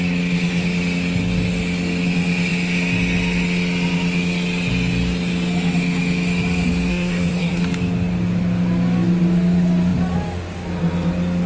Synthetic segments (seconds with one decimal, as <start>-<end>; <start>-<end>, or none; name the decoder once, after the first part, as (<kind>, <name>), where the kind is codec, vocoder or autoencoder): 6.9-7.6 (codec, SNAC)